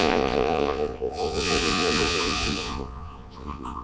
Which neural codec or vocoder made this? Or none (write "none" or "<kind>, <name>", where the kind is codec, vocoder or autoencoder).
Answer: vocoder, Vocos